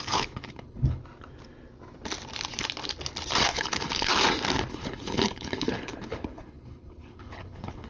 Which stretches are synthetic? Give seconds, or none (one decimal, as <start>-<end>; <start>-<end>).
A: 0.0-1.0; 3.5-4.1; 4.7-7.9